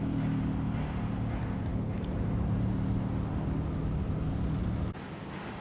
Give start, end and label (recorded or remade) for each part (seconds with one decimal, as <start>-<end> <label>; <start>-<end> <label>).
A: 0.0-5.6 recorded